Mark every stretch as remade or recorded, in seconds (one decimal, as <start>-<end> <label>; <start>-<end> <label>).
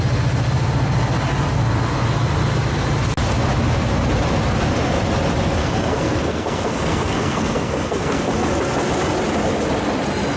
0.0-5.6 recorded; 5.6-8.3 remade; 8.3-10.4 recorded